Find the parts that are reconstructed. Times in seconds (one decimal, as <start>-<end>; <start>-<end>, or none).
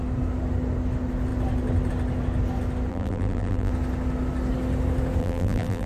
2.9-3.7; 5.2-5.9